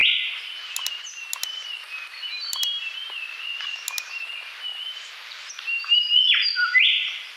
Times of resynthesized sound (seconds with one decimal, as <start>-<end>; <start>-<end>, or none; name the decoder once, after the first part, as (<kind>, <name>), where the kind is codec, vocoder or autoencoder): 4.7-6.1 (vocoder, BigVGAN v2)